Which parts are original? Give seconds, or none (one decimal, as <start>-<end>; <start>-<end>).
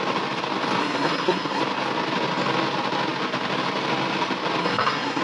0.0-0.8; 1.6-4.6